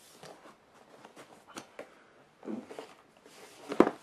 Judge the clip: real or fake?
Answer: real